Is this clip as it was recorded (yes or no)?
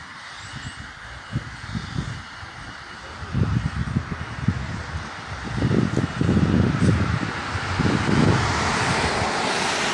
yes